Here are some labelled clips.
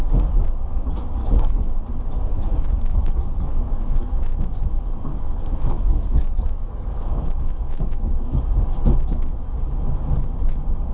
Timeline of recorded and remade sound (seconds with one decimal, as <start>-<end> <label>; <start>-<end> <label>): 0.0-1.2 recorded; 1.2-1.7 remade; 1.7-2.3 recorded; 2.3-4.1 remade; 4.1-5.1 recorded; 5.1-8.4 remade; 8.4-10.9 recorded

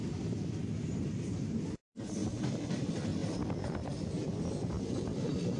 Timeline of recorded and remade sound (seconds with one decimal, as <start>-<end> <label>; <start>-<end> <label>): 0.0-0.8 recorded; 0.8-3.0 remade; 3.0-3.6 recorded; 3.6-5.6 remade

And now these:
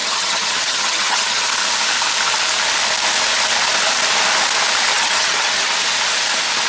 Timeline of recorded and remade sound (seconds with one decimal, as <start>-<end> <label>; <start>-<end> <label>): 0.0-1.4 remade; 1.4-4.9 recorded; 4.9-5.7 remade; 5.7-6.7 recorded